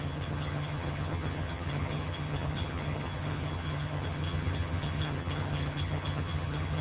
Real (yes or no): no